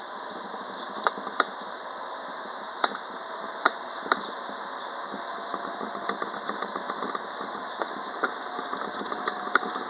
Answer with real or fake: fake